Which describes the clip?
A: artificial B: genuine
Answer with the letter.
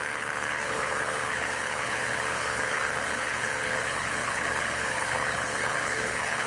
A